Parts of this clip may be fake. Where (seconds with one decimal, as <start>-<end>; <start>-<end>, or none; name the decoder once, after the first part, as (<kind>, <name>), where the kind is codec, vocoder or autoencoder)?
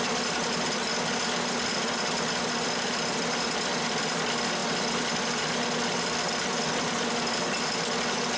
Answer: none